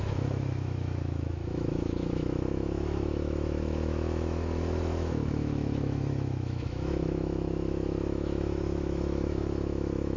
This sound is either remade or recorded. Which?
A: remade